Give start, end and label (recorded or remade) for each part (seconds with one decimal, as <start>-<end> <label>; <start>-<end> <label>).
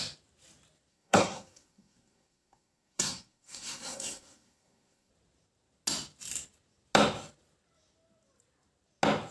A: 0.0-0.9 recorded; 0.9-5.1 remade; 5.1-9.3 recorded